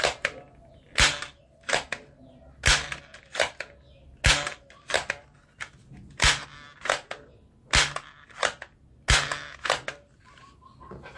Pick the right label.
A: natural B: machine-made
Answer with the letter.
A